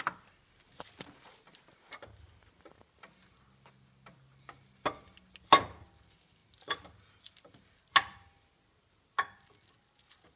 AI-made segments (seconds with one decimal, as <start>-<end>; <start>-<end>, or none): none

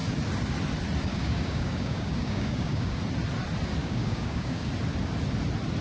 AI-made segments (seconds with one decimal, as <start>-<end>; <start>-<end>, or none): 1.1-3.0; 3.8-4.7